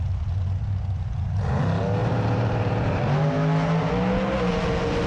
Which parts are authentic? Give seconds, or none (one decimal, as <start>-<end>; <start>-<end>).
0.0-2.0; 3.0-5.1